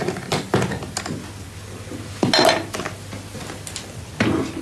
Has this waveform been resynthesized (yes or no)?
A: no